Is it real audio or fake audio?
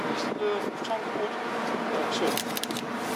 real